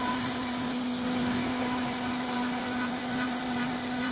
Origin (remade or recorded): recorded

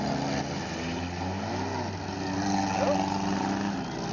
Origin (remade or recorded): recorded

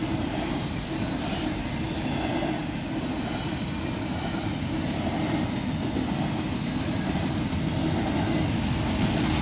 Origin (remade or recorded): recorded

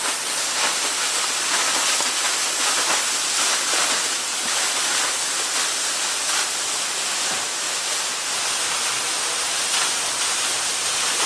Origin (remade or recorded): recorded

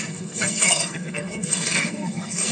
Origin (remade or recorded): remade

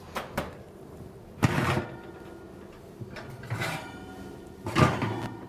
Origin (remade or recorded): recorded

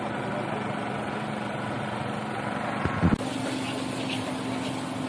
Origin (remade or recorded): recorded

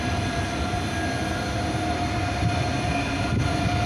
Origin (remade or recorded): recorded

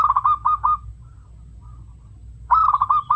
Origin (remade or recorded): recorded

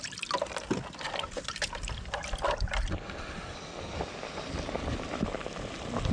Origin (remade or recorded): recorded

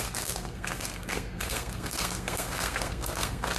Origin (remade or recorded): remade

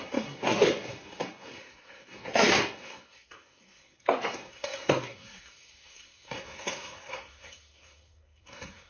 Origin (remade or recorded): remade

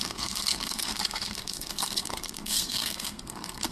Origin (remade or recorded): remade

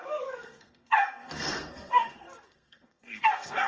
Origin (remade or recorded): remade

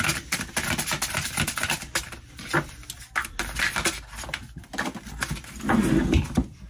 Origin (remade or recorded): recorded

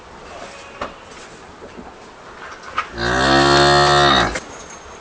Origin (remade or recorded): recorded